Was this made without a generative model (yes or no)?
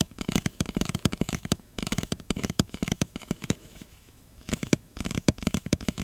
no